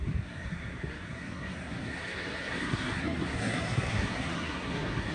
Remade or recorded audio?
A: remade